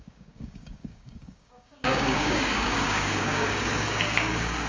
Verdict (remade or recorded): remade